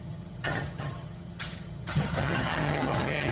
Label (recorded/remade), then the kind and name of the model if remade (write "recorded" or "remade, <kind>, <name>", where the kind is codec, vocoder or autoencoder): remade, vocoder, HiFi-GAN